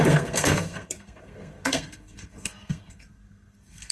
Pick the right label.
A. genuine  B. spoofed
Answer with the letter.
B